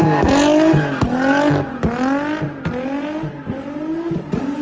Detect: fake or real real